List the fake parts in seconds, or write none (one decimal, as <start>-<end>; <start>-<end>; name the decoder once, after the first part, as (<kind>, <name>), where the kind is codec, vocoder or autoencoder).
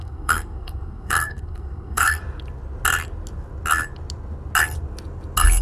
0.0-2.2 (codec, SNAC)